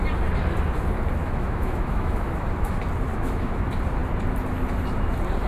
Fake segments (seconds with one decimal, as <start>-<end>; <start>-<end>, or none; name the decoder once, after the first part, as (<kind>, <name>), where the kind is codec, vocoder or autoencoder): 1.2-2.7 (autoencoder, DAC-VAE); 3.1-3.6